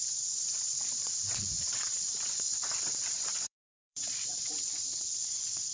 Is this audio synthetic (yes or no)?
yes